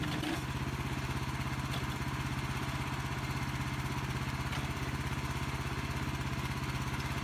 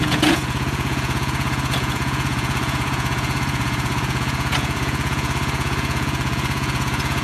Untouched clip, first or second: first